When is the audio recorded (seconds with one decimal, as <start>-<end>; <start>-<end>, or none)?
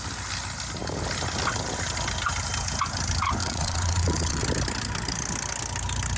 0.0-3.4; 4.4-6.2